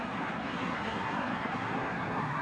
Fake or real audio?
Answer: fake